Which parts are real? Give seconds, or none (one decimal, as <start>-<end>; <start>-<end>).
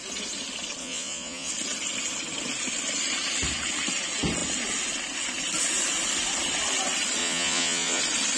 0.0-0.8; 1.5-7.2; 8.0-8.4